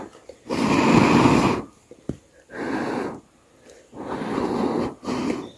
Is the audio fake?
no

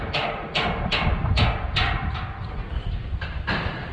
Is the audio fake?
no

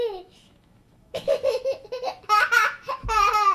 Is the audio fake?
yes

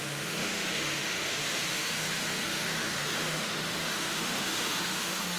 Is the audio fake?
yes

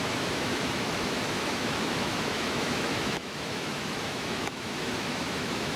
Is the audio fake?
yes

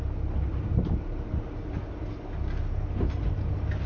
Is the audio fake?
no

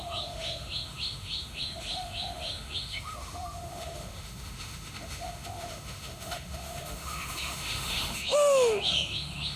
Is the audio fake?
yes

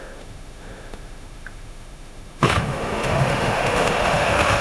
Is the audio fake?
yes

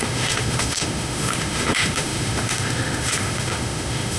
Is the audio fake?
yes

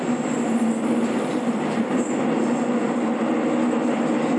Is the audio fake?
no